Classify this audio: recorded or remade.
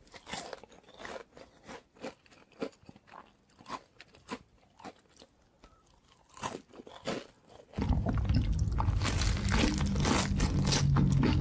recorded